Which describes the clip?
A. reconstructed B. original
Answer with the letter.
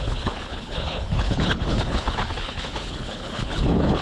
A